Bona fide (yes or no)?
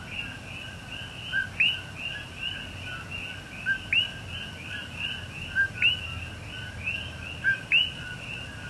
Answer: yes